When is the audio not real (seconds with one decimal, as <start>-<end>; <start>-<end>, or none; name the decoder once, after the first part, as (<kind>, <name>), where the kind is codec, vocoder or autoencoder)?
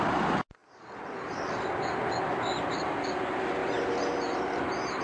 0.6-1.4 (vocoder, BigVGAN v2); 3.6-5.0